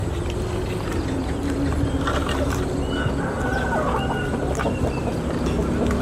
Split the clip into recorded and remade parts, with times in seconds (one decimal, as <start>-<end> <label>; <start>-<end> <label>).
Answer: 0.0-2.1 remade; 2.1-3.5 recorded; 3.5-5.1 remade; 5.1-6.0 recorded

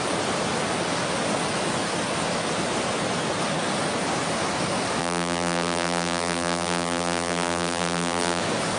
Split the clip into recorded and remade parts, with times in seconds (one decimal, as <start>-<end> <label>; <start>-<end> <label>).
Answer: 0.0-5.0 recorded; 5.0-8.4 remade; 8.4-8.8 recorded

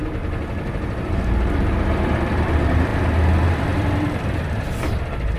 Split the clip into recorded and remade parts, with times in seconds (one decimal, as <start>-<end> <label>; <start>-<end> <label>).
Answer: 0.0-0.5 recorded; 0.5-2.9 remade; 2.9-3.5 recorded; 3.5-5.4 remade

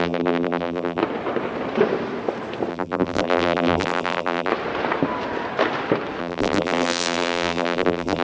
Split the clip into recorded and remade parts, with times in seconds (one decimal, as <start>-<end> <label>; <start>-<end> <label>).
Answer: 0.0-1.0 remade; 1.0-2.7 recorded; 2.7-4.5 remade; 4.5-6.2 recorded; 6.2-8.2 remade

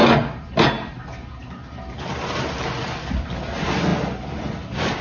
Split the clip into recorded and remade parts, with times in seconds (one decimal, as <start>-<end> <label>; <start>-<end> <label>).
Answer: 0.0-5.0 recorded